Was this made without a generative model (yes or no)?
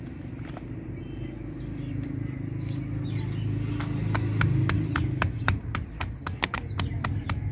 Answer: yes